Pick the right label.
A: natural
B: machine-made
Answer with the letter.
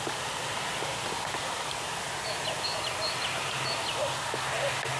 A